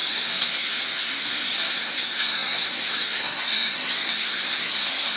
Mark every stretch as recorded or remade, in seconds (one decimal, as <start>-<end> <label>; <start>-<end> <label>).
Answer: 0.0-5.2 remade